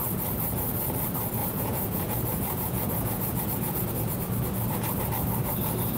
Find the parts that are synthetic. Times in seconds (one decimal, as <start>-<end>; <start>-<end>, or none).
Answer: 1.4-3.9